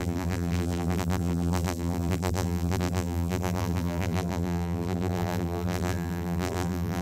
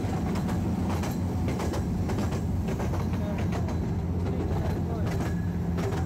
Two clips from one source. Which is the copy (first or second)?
first